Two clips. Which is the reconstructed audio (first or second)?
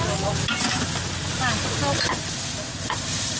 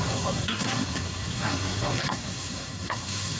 second